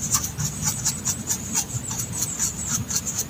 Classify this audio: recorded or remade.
recorded